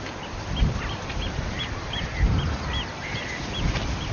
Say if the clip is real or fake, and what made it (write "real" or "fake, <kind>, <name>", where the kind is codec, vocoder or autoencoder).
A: real